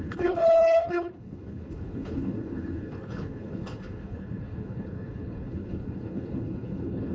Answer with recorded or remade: remade